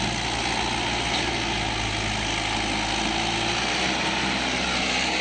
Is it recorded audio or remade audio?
recorded